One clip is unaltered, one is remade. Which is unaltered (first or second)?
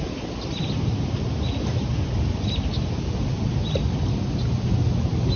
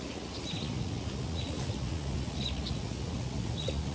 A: first